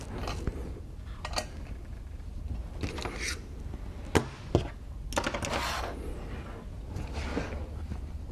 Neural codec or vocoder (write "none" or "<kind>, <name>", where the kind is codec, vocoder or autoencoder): none